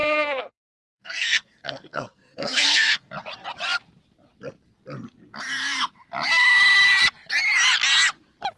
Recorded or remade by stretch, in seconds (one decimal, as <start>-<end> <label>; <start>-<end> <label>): 0.0-3.1 remade; 3.1-8.6 recorded